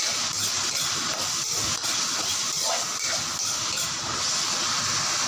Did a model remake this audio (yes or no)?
yes